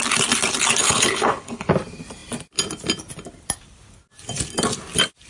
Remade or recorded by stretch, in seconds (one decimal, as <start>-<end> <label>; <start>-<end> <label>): 0.0-0.8 recorded; 0.8-1.7 remade; 1.7-5.3 recorded